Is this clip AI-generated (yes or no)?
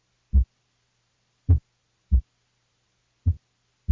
no